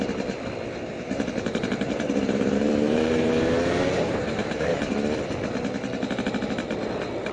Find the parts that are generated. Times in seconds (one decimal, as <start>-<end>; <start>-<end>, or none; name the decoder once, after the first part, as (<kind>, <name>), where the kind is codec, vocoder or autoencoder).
0.9-4.8 (vocoder, BigVGAN v2)